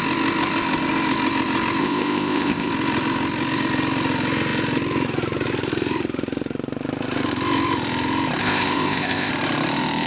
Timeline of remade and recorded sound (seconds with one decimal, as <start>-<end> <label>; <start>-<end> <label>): 0.0-1.8 recorded; 1.8-2.7 remade; 2.7-8.4 recorded; 8.4-9.3 remade; 9.3-10.1 recorded